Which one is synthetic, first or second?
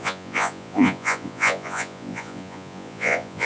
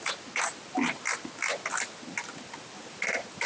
first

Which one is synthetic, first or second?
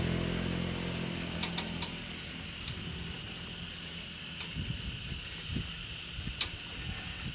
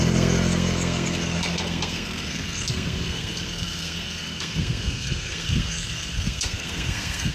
second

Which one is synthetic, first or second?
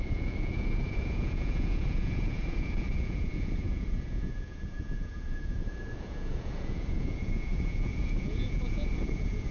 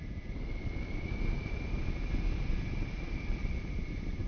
first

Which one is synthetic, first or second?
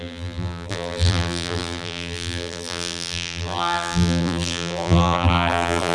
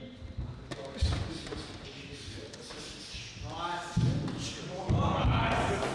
first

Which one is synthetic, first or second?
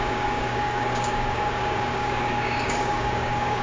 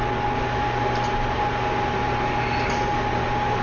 first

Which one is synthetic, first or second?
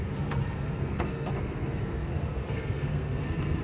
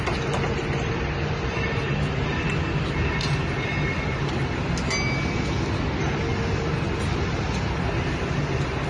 first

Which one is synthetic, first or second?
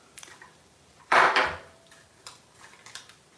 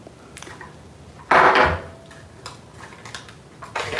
first